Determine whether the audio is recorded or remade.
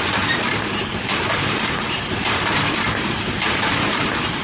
remade